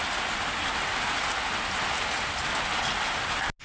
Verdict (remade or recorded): recorded